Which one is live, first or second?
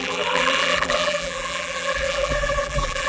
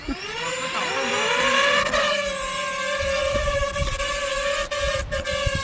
second